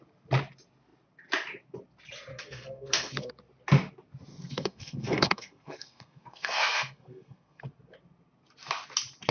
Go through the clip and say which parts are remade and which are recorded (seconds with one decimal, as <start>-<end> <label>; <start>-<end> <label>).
0.0-2.3 recorded; 2.3-3.3 remade; 3.3-4.3 recorded; 4.3-7.6 remade; 7.6-9.3 recorded